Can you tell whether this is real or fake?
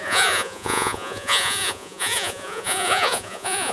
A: fake